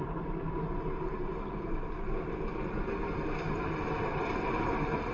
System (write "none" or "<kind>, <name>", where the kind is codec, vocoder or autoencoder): vocoder, BigVGAN v2